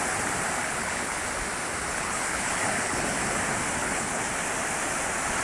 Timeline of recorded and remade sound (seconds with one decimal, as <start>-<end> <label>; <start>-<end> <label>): 0.0-0.6 recorded; 0.6-1.2 remade; 1.2-1.9 recorded; 1.9-3.2 remade; 3.2-3.8 recorded; 3.8-4.3 remade; 4.3-5.4 recorded